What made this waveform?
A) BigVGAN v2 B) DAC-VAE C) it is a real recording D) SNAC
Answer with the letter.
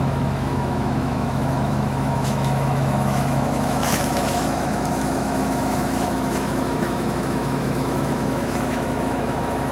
B